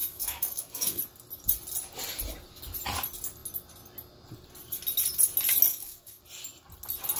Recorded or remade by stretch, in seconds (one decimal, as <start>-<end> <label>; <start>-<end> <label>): 0.0-1.0 remade; 1.0-5.7 recorded; 5.7-6.2 remade; 6.2-7.2 recorded